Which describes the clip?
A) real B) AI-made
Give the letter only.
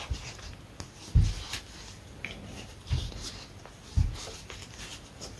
A